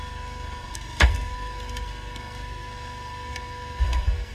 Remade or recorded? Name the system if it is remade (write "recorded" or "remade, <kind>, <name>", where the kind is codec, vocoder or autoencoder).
remade, codec, SNAC